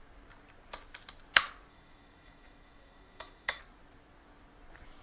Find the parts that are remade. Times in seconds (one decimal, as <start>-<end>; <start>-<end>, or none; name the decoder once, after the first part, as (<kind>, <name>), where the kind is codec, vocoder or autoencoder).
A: 1.7-3.6 (autoencoder, DAC-VAE)